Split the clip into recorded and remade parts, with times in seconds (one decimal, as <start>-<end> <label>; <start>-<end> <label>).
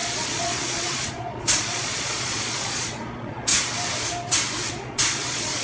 0.0-3.5 remade; 3.5-4.7 recorded; 4.7-5.6 remade